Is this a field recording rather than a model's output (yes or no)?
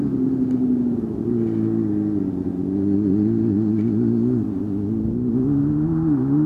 yes